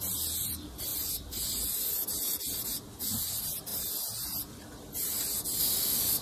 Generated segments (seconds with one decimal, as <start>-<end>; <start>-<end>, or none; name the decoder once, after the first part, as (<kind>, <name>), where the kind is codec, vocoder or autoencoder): none

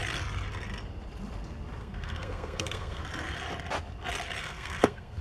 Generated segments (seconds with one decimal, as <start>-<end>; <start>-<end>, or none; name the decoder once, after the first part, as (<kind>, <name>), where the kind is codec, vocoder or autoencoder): 1.8-3.0 (codec, SNAC); 4.4-5.2